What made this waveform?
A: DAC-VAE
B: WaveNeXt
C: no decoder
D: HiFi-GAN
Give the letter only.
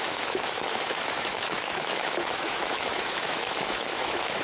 A